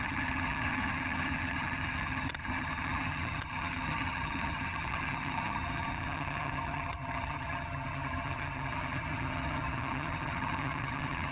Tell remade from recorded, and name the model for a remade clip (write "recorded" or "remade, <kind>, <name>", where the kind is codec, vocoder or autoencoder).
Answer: remade, vocoder, HiFi-GAN